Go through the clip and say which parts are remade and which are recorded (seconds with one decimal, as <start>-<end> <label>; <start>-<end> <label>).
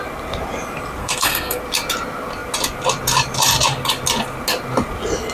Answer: 0.0-1.0 recorded; 1.0-1.6 remade; 1.6-5.3 recorded